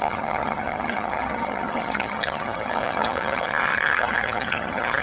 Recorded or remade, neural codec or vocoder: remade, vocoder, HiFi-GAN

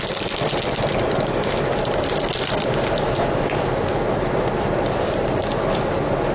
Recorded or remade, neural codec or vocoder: recorded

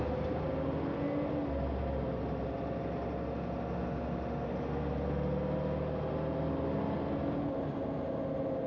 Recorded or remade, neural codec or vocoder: recorded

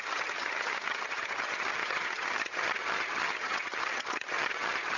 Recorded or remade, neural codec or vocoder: remade, vocoder, HiFi-GAN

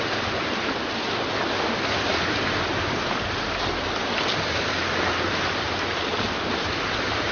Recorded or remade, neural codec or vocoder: recorded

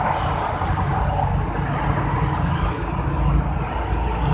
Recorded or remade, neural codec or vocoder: recorded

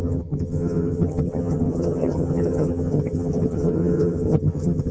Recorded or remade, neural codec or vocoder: remade, vocoder, HiFi-GAN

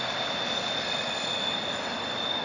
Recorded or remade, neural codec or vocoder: recorded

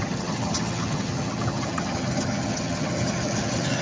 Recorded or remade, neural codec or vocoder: remade, vocoder, HiFi-GAN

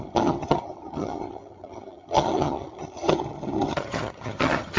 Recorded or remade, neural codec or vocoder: remade, vocoder, HiFi-GAN